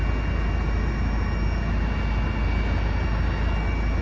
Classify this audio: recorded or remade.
recorded